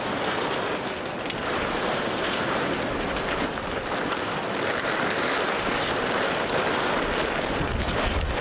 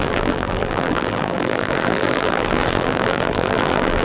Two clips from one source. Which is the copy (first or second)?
second